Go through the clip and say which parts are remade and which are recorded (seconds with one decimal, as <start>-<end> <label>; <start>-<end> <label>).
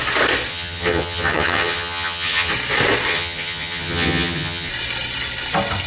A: 0.0-0.5 recorded; 0.5-2.5 remade; 2.5-3.1 recorded; 3.1-4.7 remade; 4.7-5.9 recorded